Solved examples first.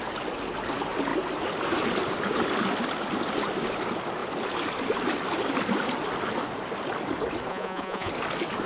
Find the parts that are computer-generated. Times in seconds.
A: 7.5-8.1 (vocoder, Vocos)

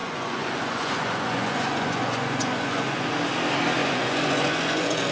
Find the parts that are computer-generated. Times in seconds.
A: 0.0-3.1 (vocoder, Vocos); 3.8-5.1

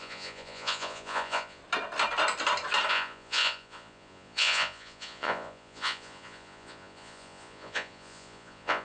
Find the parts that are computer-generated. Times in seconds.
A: 0.0-1.6 (vocoder, Vocos); 2.9-8.8

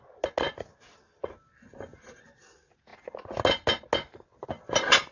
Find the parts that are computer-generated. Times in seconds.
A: none